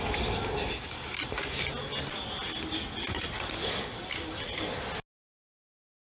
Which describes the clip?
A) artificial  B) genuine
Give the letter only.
B